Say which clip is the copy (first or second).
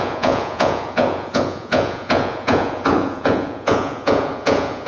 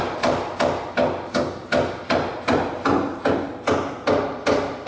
first